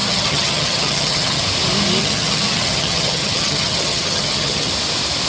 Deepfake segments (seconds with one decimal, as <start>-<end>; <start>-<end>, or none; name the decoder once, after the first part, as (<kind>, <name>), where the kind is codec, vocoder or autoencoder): 0.0-1.4 (vocoder, HiFi-GAN); 2.0-4.7